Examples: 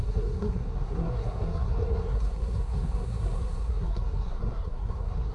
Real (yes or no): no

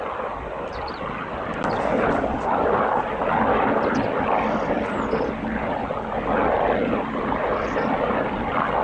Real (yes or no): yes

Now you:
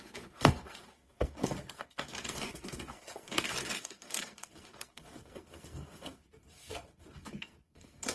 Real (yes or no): no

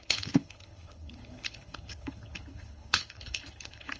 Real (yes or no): no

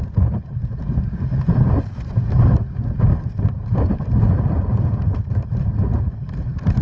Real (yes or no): yes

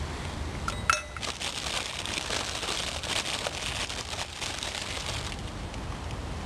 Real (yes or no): yes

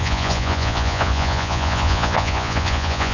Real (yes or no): no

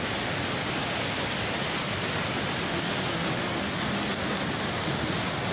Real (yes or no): yes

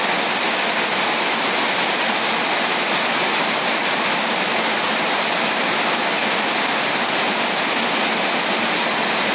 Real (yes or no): yes